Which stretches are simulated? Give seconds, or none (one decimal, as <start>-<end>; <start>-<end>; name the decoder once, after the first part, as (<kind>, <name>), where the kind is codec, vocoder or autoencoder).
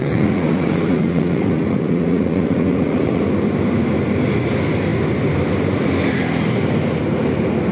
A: 0.0-3.2 (vocoder, Vocos)